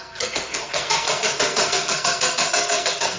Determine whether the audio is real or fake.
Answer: fake